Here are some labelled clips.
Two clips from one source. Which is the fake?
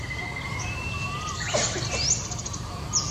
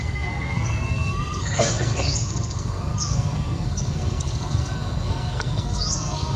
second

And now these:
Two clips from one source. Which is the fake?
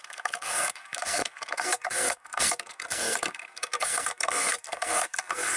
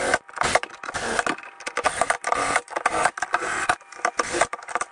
first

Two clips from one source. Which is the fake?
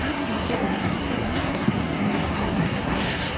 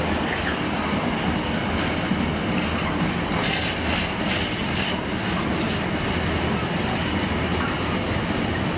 first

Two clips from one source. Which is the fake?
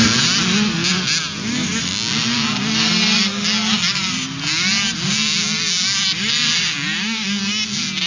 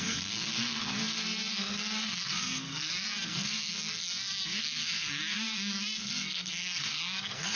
second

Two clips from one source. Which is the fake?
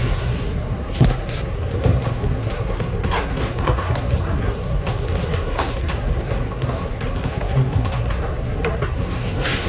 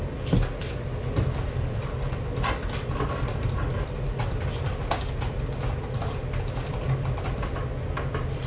first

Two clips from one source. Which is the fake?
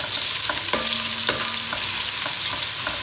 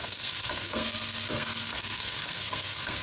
second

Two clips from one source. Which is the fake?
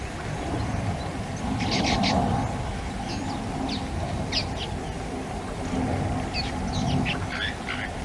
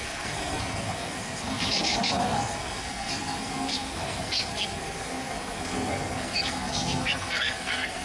second